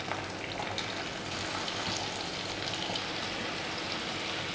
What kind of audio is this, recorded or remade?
recorded